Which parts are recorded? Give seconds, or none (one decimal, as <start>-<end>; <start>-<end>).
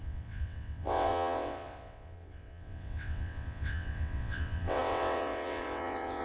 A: none